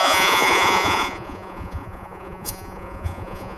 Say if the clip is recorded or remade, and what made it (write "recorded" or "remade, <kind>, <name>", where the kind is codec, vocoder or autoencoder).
remade, vocoder, Vocos